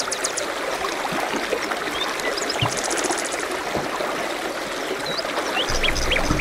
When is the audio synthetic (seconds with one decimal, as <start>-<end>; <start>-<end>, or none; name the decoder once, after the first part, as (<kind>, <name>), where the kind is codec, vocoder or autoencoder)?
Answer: 2.4-3.6 (vocoder, BigVGAN v2)